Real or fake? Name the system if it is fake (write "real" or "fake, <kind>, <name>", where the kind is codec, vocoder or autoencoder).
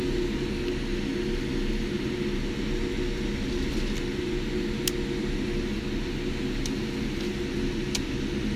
real